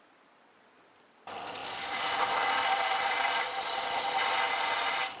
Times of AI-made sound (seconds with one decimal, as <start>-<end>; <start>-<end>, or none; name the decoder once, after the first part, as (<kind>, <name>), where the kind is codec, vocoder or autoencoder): 1.6-4.3 (vocoder, BigVGAN v2)